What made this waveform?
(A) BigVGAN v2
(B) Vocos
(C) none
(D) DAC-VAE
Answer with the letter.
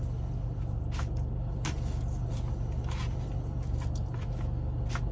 C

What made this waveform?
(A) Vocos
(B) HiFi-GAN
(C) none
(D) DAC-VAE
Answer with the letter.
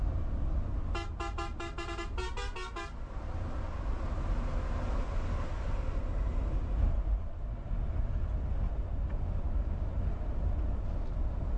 C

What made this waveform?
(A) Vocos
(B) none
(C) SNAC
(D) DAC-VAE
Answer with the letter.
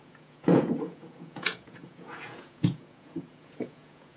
A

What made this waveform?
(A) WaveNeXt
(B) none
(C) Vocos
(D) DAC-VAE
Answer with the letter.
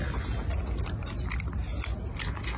B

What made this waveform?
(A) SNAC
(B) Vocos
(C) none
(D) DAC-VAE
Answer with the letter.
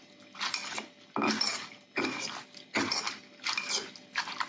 C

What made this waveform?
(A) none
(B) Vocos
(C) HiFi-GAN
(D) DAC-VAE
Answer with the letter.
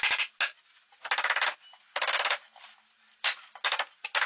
A